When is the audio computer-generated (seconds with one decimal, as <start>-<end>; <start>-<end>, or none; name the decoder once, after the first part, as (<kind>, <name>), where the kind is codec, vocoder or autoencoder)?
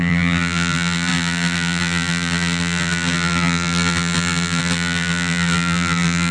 0.0-6.3 (vocoder, BigVGAN v2)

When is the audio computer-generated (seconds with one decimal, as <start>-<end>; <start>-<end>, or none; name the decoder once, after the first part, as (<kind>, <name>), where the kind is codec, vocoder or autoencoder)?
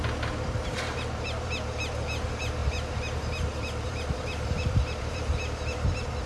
0.6-1.5 (vocoder, BigVGAN v2); 2.6-5.2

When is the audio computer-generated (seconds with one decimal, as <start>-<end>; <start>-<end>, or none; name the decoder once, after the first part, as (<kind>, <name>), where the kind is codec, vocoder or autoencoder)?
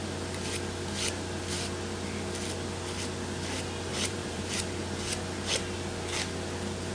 3.9-4.6 (vocoder, BigVGAN v2)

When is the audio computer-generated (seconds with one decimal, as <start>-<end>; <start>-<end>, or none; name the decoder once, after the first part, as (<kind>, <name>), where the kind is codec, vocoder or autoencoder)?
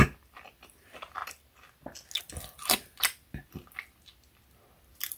0.0-1.2 (vocoder, BigVGAN v2); 2.2-4.1